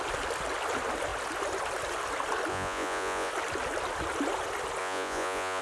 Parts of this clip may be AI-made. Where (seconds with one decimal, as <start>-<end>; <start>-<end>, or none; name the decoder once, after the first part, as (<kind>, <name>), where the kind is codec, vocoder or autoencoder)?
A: 2.5-3.3 (vocoder, Vocos); 4.8-5.6